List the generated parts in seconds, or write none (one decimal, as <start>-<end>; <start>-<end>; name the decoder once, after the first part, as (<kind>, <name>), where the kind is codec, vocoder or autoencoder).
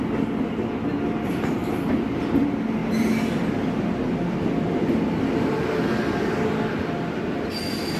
none